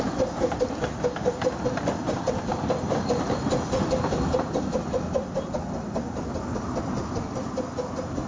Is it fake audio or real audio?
real